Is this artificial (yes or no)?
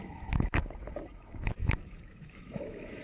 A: yes